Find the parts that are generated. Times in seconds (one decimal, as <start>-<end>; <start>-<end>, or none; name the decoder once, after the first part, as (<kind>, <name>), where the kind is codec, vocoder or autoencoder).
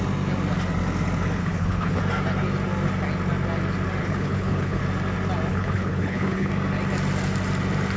1.4-2.0 (codec, HILCodec); 4.0-4.8; 5.5-6.5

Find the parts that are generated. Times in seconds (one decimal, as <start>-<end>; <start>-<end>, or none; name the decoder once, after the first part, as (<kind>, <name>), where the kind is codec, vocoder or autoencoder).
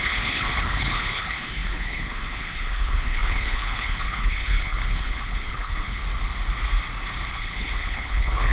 0.0-6.0 (codec, HILCodec); 7.3-8.5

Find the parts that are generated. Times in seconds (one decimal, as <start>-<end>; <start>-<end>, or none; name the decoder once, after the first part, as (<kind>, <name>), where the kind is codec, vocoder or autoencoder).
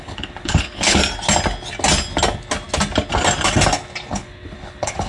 0.0-1.0 (codec, HILCodec); 4.1-5.1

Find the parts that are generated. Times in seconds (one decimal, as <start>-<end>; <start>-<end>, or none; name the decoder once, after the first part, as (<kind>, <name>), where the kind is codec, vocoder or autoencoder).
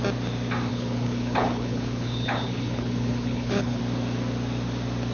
0.7-3.8 (codec, HILCodec)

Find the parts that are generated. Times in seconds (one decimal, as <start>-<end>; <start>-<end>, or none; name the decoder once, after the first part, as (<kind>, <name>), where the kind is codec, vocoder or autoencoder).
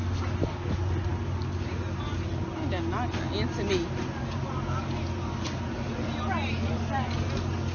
none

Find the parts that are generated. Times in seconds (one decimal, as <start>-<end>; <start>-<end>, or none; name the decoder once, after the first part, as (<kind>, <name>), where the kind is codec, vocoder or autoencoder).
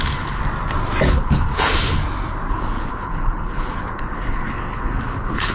0.0-0.4 (codec, HILCodec); 1.1-2.0; 2.5-5.5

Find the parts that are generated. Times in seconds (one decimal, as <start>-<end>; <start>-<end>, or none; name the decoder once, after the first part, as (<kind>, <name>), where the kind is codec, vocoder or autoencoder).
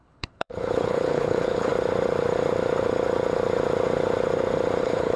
0.0-1.7 (codec, HILCodec); 4.8-5.2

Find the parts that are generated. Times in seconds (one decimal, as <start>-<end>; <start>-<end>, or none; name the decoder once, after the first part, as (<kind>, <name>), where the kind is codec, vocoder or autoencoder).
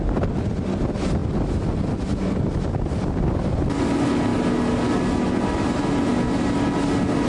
none